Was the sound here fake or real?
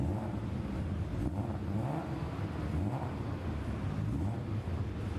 real